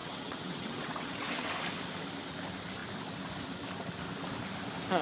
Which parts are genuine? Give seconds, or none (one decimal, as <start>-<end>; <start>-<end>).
1.5-5.0